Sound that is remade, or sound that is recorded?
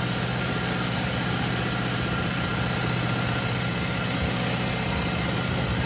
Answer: recorded